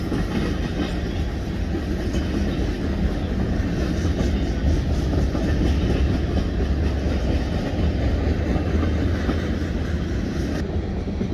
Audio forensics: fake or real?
real